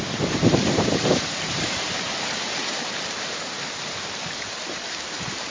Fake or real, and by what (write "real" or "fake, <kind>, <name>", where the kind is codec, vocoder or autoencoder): fake, vocoder, BigVGAN v2